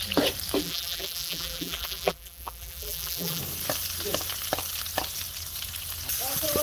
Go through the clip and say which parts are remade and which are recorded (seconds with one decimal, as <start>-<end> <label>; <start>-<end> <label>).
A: 0.0-0.6 recorded; 0.6-3.4 remade; 3.4-6.6 recorded